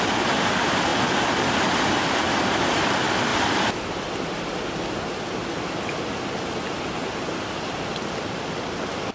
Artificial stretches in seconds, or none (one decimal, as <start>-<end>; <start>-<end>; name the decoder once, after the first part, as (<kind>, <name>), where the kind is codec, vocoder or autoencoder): none